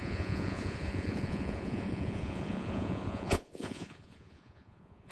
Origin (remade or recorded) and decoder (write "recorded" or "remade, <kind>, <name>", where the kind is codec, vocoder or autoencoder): remade, vocoder, Vocos